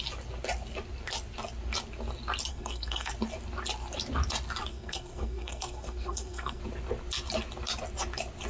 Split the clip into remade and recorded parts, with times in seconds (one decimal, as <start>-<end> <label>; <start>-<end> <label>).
0.0-2.5 recorded; 2.5-3.1 remade; 3.1-4.7 recorded; 4.7-6.6 remade; 6.6-8.5 recorded